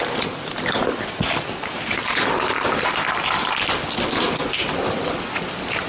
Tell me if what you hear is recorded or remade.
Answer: recorded